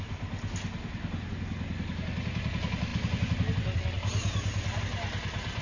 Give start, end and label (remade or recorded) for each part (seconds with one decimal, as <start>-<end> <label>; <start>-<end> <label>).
0.0-5.6 recorded